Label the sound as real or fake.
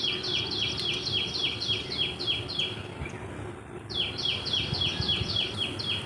real